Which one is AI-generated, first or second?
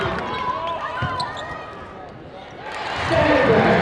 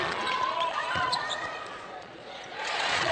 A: second